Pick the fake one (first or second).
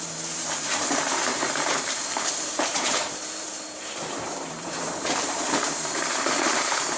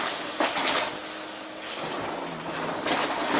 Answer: first